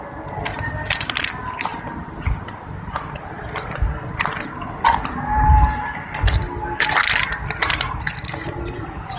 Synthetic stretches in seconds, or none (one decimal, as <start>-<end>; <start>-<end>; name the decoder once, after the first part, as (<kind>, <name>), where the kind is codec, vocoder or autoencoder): none